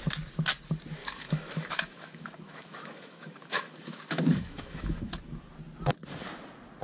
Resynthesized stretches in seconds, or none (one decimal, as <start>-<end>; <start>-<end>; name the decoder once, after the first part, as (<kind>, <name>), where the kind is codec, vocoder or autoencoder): 1.0-5.1 (autoencoder, DAC-VAE)